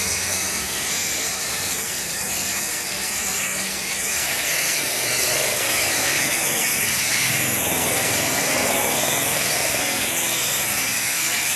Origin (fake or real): fake